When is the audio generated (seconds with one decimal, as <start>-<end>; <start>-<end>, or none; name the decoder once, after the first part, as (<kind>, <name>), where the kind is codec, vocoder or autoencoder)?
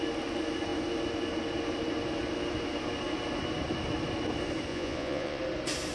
4.7-5.4 (vocoder, Vocos)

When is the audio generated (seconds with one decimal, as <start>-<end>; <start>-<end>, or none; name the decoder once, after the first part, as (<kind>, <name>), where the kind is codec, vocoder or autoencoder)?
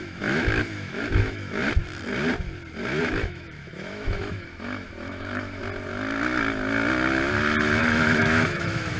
0.0-1.6 (autoencoder, DAC-VAE); 3.0-5.6; 7.8-9.0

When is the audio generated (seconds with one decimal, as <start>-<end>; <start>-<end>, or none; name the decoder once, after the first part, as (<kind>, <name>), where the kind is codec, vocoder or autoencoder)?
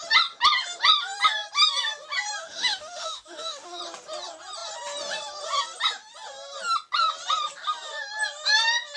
2.4-3.8 (autoencoder, DAC-VAE)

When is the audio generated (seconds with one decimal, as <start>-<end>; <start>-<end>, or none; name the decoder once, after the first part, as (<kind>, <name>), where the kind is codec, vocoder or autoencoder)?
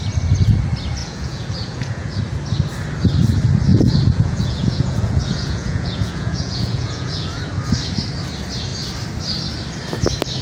1.0-2.2 (vocoder, Vocos); 3.7-7.4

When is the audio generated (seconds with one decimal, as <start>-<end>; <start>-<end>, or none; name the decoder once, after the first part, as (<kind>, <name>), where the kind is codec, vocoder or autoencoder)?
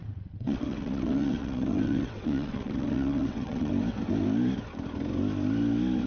0.0-3.7 (vocoder, WaveNeXt)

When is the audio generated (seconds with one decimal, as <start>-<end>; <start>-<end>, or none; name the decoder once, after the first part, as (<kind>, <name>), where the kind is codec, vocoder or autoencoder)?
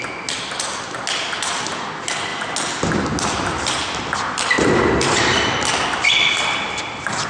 none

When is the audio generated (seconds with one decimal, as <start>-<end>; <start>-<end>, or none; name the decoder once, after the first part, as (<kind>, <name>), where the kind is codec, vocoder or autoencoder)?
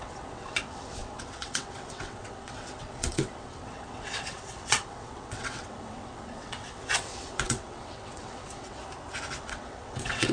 0.0-8.8 (vocoder, WaveNeXt); 9.4-10.3